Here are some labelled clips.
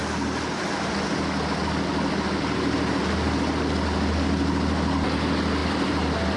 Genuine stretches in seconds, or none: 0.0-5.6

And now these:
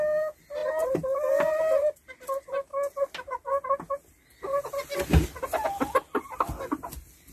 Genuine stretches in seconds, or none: 0.0-0.6; 1.3-7.3

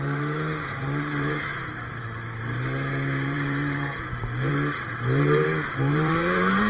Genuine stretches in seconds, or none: none

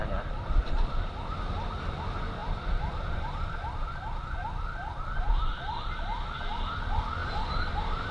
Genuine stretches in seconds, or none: 0.6-2.4; 4.1-7.2

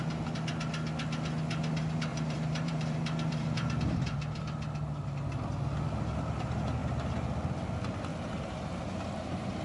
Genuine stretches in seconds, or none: 0.0-2.1; 3.8-8.1

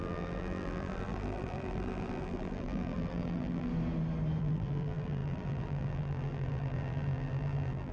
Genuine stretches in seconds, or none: 3.7-4.4

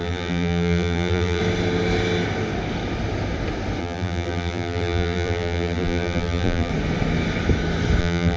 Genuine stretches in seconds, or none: 1.4-3.8; 6.7-8.0